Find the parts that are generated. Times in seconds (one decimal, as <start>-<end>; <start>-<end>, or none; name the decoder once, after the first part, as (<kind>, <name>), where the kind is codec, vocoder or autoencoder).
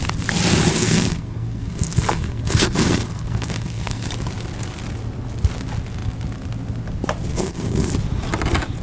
0.7-4.1 (codec, SNAC); 7.3-7.9